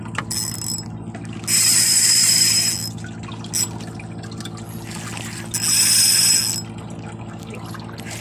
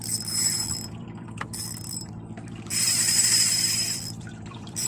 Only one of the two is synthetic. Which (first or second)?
second